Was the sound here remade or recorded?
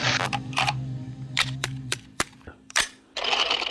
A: remade